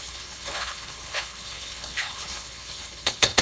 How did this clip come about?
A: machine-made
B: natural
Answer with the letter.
A